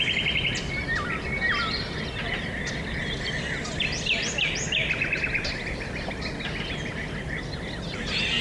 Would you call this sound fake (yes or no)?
no